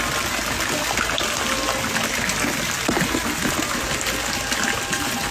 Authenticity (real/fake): real